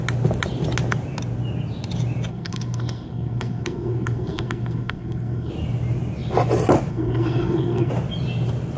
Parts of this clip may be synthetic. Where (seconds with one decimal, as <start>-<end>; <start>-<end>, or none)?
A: 2.3-5.5; 6.9-7.9